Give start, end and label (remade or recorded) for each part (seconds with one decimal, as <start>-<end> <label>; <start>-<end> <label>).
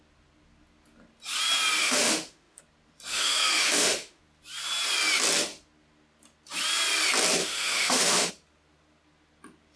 0.0-1.8 recorded; 1.8-2.6 remade; 2.6-3.1 recorded; 3.1-4.2 remade; 4.2-7.4 recorded; 7.4-8.3 remade; 8.3-9.8 recorded